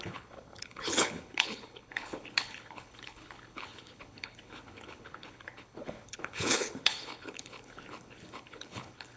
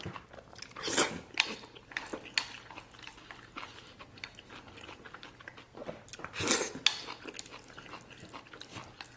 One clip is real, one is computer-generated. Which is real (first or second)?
second